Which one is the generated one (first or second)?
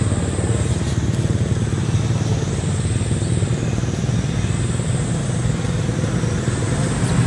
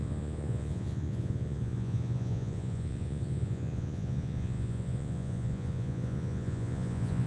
second